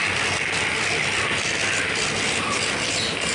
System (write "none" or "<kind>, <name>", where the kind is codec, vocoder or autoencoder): none